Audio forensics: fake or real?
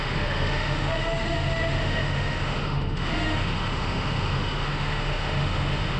fake